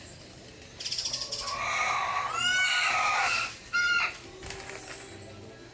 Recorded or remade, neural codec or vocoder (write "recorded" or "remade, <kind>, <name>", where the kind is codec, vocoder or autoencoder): recorded